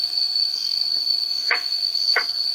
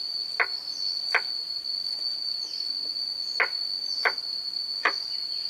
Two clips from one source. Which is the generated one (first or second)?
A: first